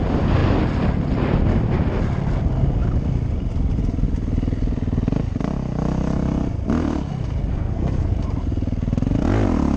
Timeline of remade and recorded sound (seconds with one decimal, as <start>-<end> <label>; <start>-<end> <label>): 0.0-7.5 recorded; 7.5-8.1 remade; 8.1-9.8 recorded